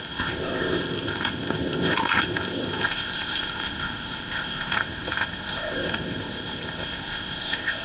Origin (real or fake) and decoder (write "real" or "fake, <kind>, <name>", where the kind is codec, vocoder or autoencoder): fake, codec, ZipCodec